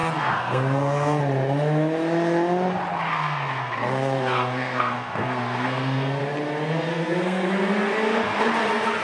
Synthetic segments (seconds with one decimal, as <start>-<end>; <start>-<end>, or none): 0.0-1.2; 3.1-6.2; 6.9-7.5